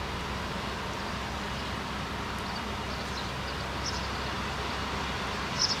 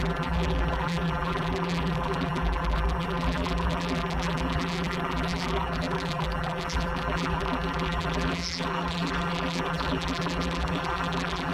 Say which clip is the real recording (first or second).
first